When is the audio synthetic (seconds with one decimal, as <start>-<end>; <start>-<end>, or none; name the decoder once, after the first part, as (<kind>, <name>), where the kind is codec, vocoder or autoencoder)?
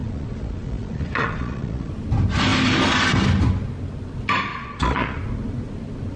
0.0-1.9 (vocoder, Vocos); 4.5-5.2